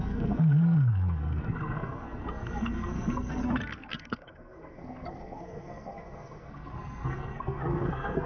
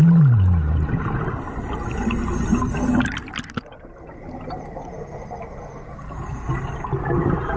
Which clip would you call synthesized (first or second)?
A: first